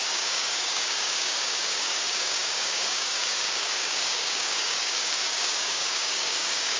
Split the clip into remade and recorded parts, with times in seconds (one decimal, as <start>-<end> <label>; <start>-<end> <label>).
0.0-6.8 remade